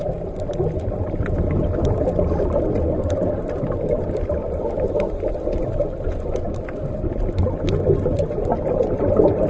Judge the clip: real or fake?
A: real